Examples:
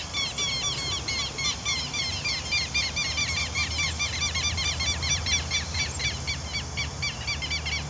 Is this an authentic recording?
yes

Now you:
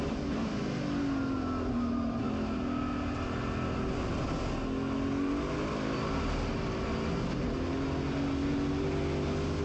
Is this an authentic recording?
yes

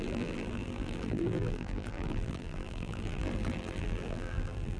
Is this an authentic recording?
no